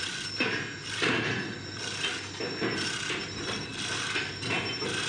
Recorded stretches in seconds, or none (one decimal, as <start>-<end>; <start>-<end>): 0.0-5.1